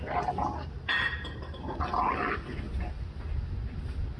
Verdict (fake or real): real